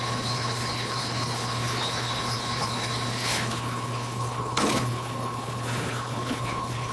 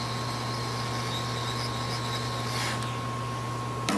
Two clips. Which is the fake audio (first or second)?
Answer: first